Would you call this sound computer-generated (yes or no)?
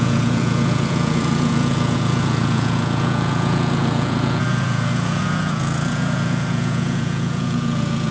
yes